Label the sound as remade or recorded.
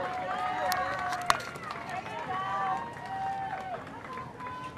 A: recorded